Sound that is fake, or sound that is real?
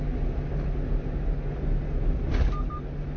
real